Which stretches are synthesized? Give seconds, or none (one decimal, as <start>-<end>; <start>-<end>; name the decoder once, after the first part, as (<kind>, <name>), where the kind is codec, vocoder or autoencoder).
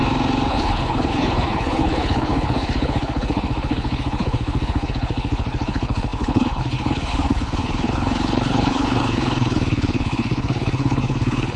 0.5-11.6 (codec, HILCodec)